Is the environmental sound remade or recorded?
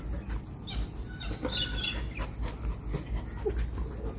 recorded